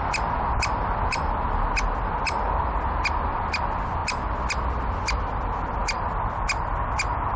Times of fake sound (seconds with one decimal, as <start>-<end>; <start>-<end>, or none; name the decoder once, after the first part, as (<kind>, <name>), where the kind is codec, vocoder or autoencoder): none